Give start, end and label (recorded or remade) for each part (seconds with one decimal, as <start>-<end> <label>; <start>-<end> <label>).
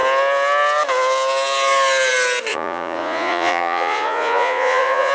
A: 0.0-2.5 recorded; 2.5-5.1 remade